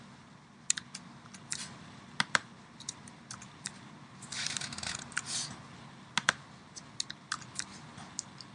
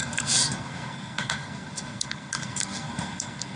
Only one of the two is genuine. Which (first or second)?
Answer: first